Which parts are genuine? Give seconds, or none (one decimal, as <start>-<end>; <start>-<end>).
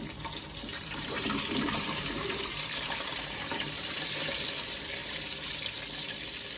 0.0-0.7; 4.4-5.0; 5.5-6.6